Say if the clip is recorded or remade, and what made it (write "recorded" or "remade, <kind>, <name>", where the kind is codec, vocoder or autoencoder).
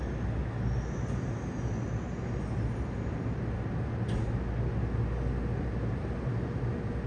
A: recorded